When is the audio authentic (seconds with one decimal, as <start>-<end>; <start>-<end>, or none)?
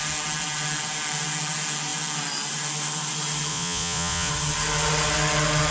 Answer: 0.0-3.5; 4.3-5.7